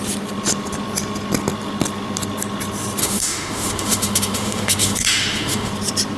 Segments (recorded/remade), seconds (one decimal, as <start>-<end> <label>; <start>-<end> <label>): 0.0-3.0 recorded; 3.0-5.7 remade; 5.7-6.2 recorded